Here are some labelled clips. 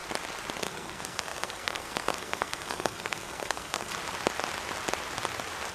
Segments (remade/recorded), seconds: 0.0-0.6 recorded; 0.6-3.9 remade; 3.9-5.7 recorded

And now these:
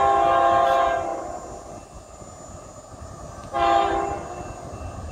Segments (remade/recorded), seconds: 0.0-5.1 recorded